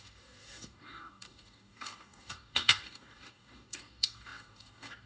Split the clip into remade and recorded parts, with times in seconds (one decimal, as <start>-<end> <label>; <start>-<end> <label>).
0.0-5.1 remade